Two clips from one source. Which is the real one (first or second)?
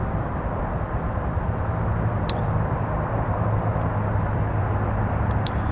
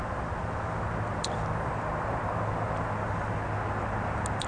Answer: second